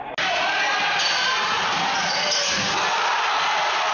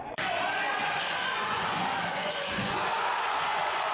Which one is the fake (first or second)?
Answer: second